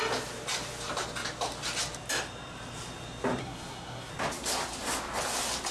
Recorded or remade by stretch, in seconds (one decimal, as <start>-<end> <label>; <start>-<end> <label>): 0.0-3.4 recorded; 3.4-4.1 remade; 4.1-5.7 recorded